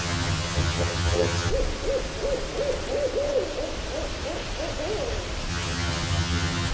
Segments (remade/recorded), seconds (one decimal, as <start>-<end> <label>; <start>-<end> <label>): 0.0-1.5 remade; 1.5-5.5 recorded; 5.5-6.7 remade